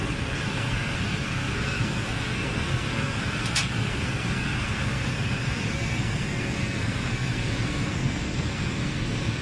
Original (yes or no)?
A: no